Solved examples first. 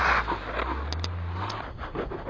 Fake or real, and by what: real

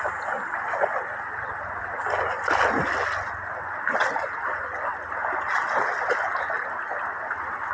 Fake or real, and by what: real